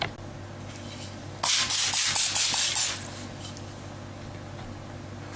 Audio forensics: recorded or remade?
recorded